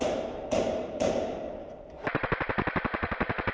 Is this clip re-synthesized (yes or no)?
yes